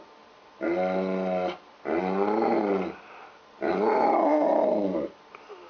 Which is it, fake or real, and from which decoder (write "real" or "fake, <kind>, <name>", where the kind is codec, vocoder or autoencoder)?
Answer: real